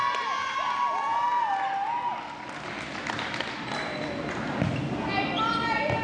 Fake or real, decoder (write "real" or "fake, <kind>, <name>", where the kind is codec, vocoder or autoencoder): real